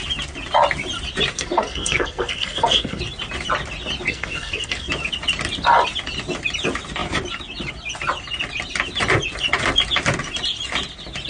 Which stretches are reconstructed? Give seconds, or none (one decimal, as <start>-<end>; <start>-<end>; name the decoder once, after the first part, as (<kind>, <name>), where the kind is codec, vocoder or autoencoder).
1.3-3.0 (codec, SNAC); 4.1-4.9